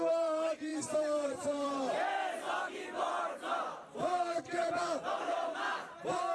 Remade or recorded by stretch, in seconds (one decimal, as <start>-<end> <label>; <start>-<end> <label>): 0.0-0.7 recorded; 0.7-3.1 remade; 3.1-4.0 recorded; 4.0-4.8 remade; 4.8-6.3 recorded